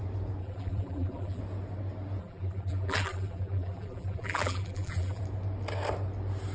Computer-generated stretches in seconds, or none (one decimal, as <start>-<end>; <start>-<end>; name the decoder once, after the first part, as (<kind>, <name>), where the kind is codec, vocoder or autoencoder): 0.4-1.4 (vocoder, BigVGAN v2); 2.2-5.2

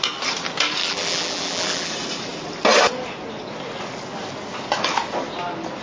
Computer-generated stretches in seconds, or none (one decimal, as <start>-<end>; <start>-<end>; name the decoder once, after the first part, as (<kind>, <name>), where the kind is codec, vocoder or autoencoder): 0.8-1.9 (vocoder, BigVGAN v2)

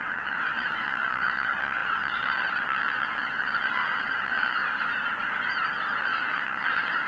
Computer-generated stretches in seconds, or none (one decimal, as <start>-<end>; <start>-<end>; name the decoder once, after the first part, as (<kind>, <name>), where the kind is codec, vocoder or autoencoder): 0.0-4.6 (vocoder, WaveNeXt); 6.0-7.1

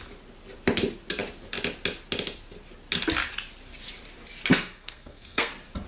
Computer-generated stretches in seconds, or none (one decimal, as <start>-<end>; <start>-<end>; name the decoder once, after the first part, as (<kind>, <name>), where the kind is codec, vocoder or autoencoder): 4.5-5.5 (codec, SNAC)

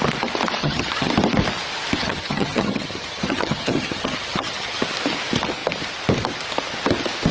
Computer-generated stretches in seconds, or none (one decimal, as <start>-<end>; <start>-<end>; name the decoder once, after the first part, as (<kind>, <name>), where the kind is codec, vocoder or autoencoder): 0.6-1.1 (vocoder, HiFi-GAN); 2.0-4.8

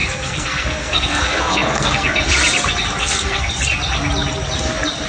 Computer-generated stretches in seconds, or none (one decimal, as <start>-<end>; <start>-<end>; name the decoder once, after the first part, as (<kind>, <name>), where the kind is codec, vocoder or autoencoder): 0.0-2.2 (codec, SNAC); 3.0-3.5